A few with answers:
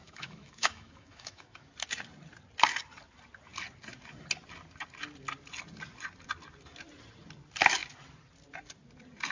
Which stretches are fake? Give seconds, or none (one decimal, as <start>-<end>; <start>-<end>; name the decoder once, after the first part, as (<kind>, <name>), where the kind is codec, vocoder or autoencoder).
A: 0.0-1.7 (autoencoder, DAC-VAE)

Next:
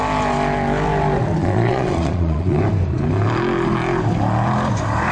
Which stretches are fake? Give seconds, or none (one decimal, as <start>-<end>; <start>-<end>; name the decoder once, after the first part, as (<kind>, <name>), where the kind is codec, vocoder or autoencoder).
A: 1.4-2.6 (vocoder, Vocos)

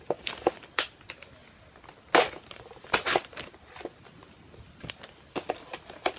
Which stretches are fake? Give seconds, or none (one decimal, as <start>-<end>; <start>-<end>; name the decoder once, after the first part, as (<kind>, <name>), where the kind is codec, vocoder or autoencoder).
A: none